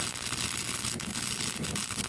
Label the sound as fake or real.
real